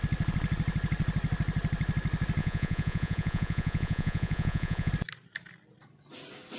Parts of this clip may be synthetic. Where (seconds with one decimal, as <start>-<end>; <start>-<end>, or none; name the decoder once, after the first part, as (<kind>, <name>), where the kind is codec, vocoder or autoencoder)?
2.4-4.9 (vocoder, Vocos)